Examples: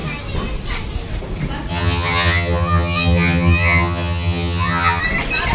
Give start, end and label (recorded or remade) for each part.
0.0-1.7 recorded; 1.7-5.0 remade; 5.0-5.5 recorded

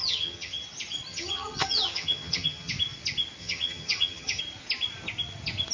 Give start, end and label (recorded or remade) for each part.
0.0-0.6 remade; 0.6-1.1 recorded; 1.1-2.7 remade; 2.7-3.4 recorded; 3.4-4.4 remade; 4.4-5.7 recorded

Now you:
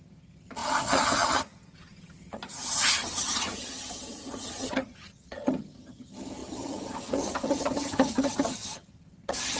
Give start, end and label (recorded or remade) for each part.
0.0-9.6 remade

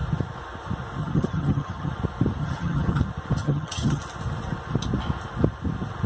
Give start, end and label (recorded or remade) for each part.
0.0-1.0 recorded; 1.0-1.9 remade; 1.9-2.4 recorded; 2.4-3.0 remade; 3.0-3.4 recorded; 3.4-4.0 remade; 4.0-6.1 recorded

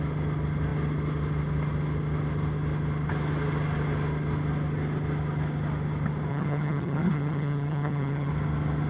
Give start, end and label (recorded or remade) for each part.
0.0-6.3 recorded; 6.3-8.3 remade; 8.3-8.9 recorded